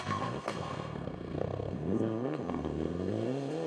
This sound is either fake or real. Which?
fake